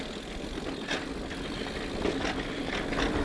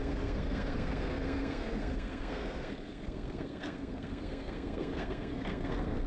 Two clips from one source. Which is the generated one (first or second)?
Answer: second